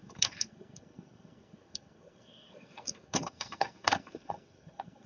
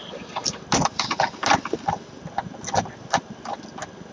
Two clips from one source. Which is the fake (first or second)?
first